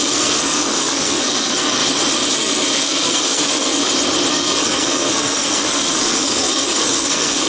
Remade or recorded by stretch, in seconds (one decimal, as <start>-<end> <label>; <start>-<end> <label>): 0.0-1.8 remade; 1.8-2.3 recorded; 2.3-3.8 remade; 3.8-4.3 recorded; 4.3-7.5 remade